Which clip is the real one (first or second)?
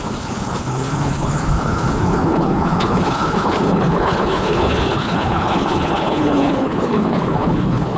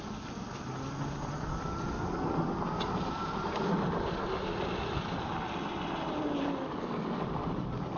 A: second